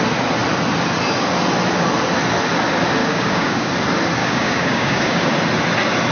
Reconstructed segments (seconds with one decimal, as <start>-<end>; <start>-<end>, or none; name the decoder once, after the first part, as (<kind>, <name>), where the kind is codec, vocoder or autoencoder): 3.0-3.7 (codec, DAC); 4.2-5.3